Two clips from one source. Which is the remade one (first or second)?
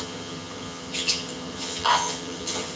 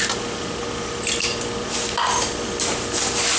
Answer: first